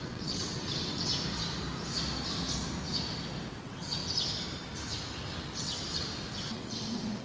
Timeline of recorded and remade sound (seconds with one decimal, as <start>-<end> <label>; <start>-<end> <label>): 0.0-1.1 remade; 1.1-3.6 recorded; 3.6-4.0 remade; 4.0-5.2 recorded; 5.2-5.8 remade; 5.8-6.4 recorded; 6.4-7.2 remade